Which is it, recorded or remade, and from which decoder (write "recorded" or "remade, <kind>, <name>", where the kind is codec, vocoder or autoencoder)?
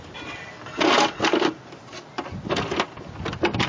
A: recorded